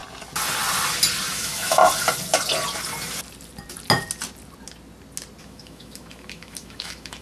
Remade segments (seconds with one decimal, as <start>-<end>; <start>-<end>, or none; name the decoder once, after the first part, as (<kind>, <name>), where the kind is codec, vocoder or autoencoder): 1.3-1.8 (autoencoder, DAC-VAE); 5.4-7.2